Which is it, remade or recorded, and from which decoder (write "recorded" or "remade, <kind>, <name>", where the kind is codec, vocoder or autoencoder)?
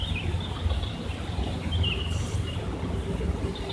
recorded